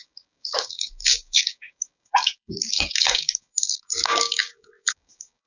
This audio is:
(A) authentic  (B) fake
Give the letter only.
B